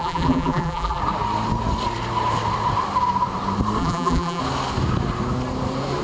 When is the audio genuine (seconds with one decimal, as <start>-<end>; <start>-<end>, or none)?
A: 1.0-3.8; 4.4-6.0